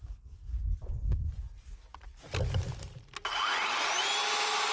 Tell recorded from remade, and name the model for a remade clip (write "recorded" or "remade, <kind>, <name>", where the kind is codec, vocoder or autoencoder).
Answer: recorded